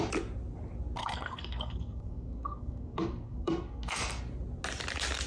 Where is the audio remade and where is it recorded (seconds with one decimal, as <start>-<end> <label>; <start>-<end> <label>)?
0.0-1.0 recorded; 1.0-4.2 remade; 4.2-5.3 recorded